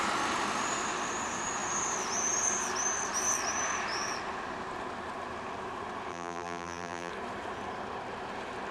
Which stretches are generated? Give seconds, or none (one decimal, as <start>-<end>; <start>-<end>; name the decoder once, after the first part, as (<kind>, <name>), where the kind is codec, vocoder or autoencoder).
6.1-7.1 (vocoder, BigVGAN v2)